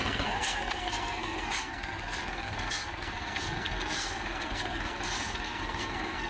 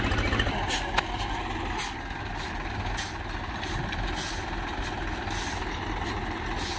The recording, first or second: second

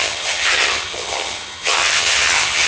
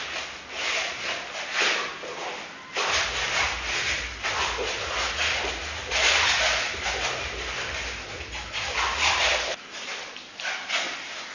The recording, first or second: second